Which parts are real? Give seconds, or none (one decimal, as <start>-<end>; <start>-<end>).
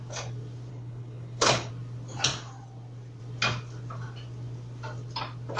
0.0-0.7; 1.7-5.6